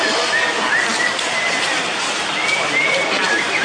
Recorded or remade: recorded